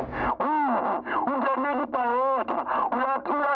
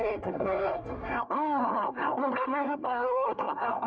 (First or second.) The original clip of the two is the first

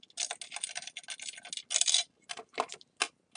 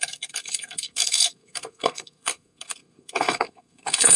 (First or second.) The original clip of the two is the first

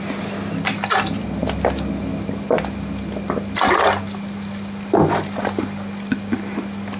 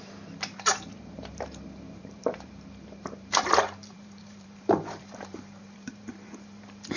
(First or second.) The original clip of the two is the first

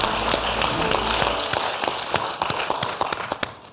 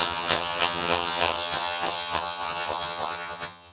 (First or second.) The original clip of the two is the first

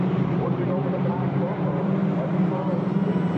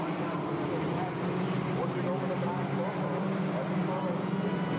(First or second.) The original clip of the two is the second